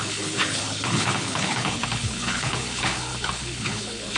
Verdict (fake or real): fake